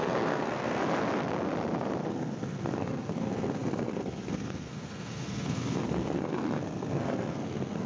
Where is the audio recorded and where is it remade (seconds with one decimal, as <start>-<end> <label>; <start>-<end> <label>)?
0.0-0.8 remade; 0.8-2.0 recorded; 2.0-7.9 remade